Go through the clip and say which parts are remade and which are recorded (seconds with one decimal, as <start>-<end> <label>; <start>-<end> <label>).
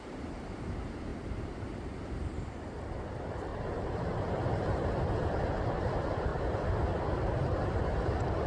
0.0-1.1 recorded; 1.1-2.4 remade; 2.4-3.5 recorded; 3.5-4.9 remade; 4.9-6.3 recorded; 6.3-6.8 remade; 6.8-8.5 recorded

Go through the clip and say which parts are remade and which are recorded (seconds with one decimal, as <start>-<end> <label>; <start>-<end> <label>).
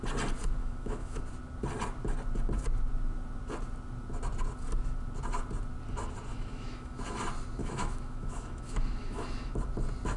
0.0-0.6 recorded; 0.6-1.2 remade; 1.2-6.3 recorded; 6.3-7.0 remade; 7.0-7.6 recorded; 7.6-9.5 remade; 9.5-10.2 recorded